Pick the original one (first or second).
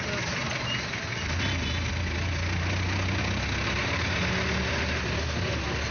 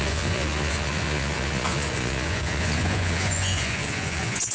first